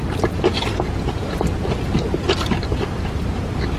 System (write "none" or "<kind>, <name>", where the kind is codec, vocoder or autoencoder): none